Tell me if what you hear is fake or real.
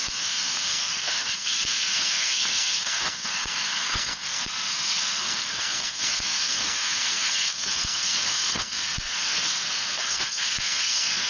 fake